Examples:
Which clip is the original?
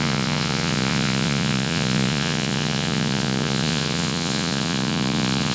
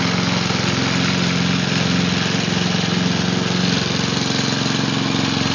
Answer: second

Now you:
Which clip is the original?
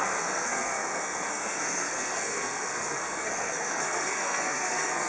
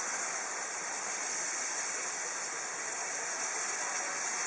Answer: second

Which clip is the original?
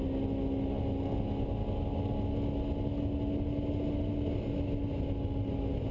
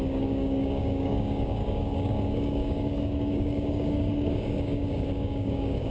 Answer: first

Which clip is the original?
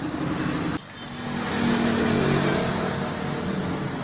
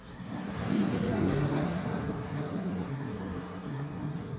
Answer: first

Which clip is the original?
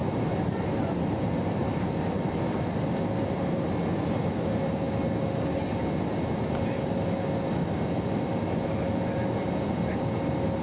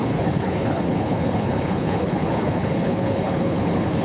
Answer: first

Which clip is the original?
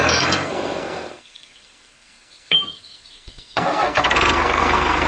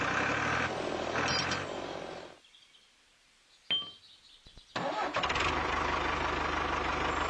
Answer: second